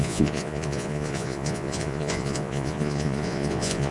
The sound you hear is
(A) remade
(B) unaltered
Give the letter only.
A